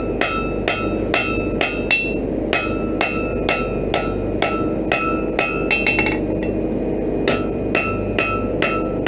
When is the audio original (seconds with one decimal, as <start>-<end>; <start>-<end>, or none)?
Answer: 0.0-9.1